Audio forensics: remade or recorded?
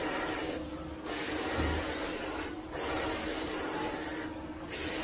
recorded